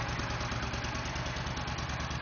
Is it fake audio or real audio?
real